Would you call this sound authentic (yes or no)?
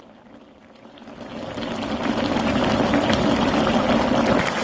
yes